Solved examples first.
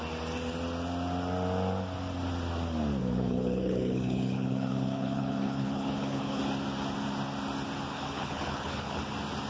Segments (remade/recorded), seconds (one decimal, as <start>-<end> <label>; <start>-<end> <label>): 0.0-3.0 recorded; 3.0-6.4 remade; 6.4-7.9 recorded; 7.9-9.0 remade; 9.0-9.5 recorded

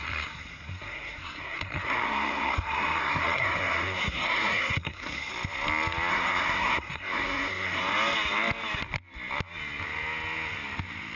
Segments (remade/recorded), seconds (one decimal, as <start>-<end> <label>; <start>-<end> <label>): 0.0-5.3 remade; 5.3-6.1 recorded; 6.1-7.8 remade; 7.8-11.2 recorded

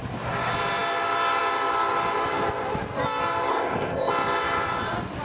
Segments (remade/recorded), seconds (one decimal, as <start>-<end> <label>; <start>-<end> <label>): 0.0-3.5 recorded; 3.5-4.1 remade; 4.1-5.2 recorded

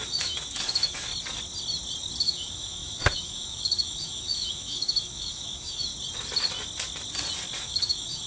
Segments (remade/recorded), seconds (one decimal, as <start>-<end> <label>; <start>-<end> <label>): 0.0-1.1 remade; 1.1-2.2 recorded; 2.2-5.9 remade; 5.9-7.6 recorded; 7.6-8.3 remade

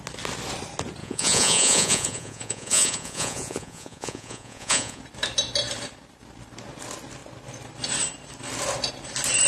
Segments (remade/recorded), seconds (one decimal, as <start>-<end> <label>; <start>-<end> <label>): 0.0-1.0 recorded; 1.0-5.0 remade; 5.0-9.5 recorded

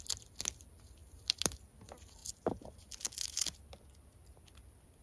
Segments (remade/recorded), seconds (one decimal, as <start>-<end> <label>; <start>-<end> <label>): 0.0-1.0 recorded; 1.0-1.6 remade; 1.6-2.2 recorded; 2.2-3.6 remade; 3.6-5.0 recorded

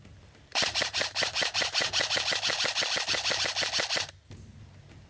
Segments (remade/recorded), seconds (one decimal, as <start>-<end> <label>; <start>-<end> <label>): 0.0-0.5 recorded; 0.5-2.1 remade; 2.1-5.1 recorded